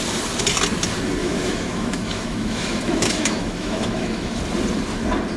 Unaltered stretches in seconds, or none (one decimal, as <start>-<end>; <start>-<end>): 0.0-1.2; 4.4-5.4